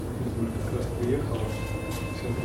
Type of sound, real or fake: fake